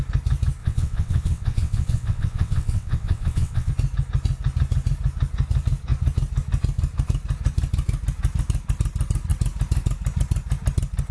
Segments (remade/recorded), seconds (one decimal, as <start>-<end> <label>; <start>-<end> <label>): 0.0-0.6 recorded; 0.6-3.7 remade; 3.7-11.1 recorded